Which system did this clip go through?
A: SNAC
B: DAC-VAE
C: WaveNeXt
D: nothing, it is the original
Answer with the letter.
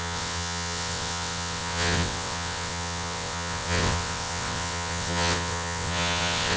C